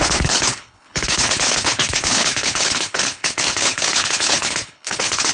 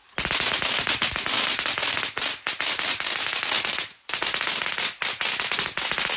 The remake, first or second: first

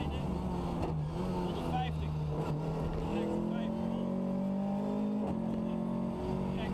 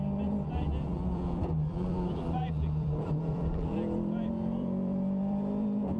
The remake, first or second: second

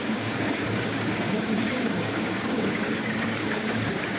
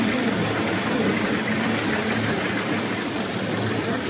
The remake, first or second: first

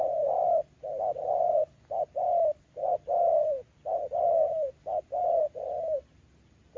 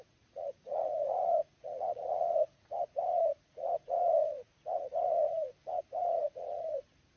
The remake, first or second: second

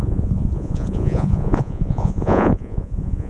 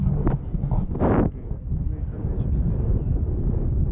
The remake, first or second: first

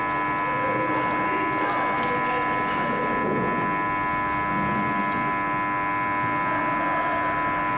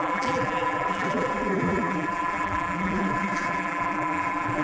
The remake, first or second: second